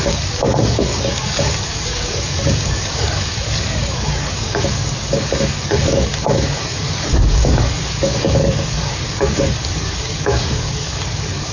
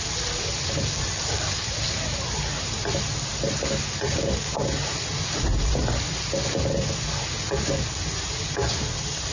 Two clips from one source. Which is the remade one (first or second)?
first